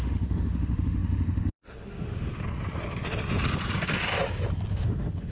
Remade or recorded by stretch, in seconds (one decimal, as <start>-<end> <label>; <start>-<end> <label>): 0.0-2.3 remade; 2.3-4.7 recorded; 4.7-5.3 remade